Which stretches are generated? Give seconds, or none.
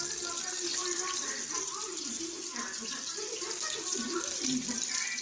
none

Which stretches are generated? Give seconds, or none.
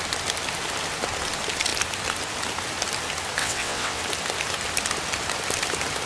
3.4-4.0 (vocoder, WaveNeXt)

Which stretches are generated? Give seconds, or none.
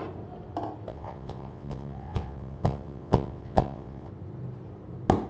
0.9-4.1 (vocoder, WaveNeXt)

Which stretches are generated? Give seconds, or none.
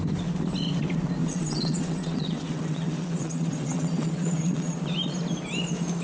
1.2-4.8 (vocoder, WaveNeXt)